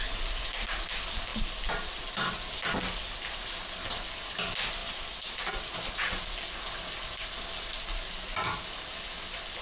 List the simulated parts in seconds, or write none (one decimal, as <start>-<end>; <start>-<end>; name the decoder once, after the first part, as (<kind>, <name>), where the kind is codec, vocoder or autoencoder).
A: 1.3-2.3 (vocoder, BigVGAN v2); 4.8-5.9